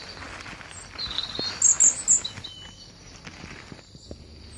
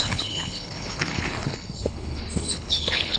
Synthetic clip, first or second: second